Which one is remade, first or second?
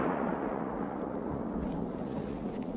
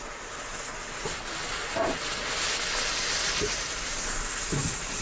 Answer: first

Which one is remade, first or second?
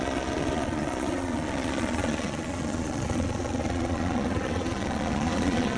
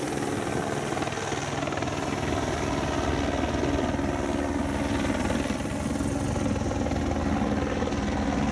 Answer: first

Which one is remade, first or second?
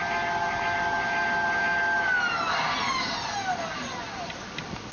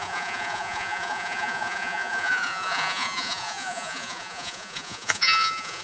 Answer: second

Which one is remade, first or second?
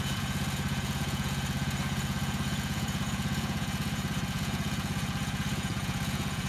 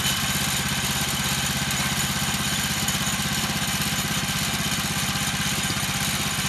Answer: first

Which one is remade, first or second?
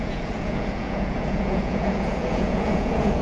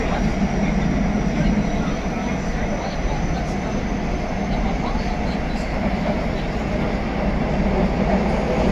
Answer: first